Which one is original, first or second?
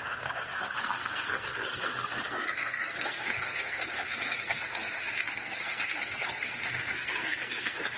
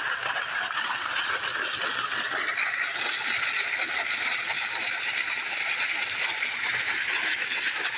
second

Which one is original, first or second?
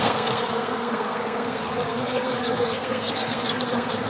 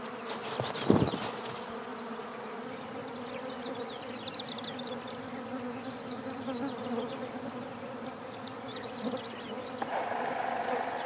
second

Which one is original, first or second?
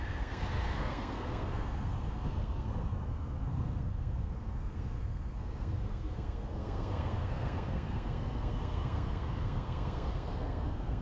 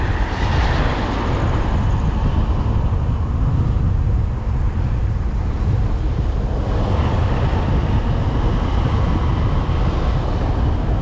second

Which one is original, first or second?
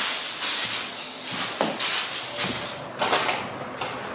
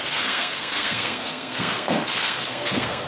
first